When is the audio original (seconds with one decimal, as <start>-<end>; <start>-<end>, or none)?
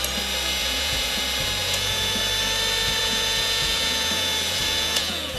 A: 0.0-0.6; 1.2-1.6; 2.2-3.0